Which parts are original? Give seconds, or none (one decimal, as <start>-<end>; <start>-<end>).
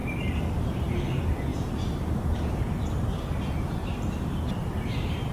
0.0-1.5; 2.6-3.8; 4.4-5.3